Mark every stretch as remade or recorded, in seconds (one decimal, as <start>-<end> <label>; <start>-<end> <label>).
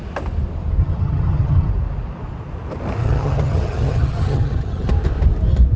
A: 0.0-0.8 recorded; 0.8-1.7 remade; 1.7-3.0 recorded; 3.0-4.9 remade; 4.9-5.8 recorded